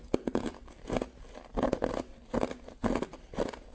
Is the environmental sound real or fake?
real